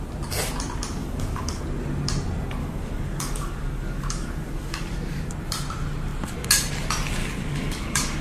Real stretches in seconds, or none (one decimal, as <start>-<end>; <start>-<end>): 0.0-1.0; 1.6-2.6; 5.3-7.2